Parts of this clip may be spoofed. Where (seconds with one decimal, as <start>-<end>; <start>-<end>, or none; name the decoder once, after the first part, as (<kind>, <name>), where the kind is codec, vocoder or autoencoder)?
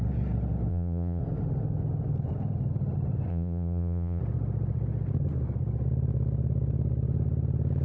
0.7-1.2 (vocoder, Vocos); 3.3-4.2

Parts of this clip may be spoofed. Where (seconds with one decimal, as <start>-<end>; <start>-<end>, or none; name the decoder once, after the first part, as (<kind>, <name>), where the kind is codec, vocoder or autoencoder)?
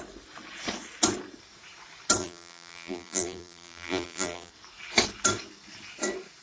2.2-4.5 (vocoder, BigVGAN v2)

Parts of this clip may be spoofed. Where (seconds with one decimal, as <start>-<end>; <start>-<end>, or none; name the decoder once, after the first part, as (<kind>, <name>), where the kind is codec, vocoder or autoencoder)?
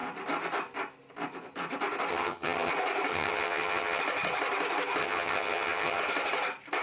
2.1-2.7 (vocoder, HiFi-GAN); 3.1-4.0; 5.0-6.0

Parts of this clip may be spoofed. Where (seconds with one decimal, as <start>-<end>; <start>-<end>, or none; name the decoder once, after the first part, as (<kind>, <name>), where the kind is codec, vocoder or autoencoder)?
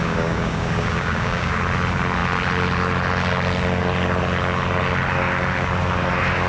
0.0-1.6 (codec, DAC)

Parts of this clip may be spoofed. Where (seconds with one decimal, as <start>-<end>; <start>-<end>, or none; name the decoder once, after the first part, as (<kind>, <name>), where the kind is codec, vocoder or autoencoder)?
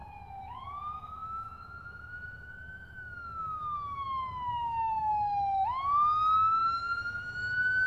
0.0-7.9 (autoencoder, DAC-VAE)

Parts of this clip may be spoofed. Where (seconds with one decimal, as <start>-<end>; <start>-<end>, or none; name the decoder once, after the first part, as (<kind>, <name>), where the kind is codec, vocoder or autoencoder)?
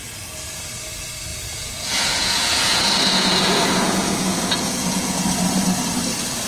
1.3-5.2 (vocoder, Vocos)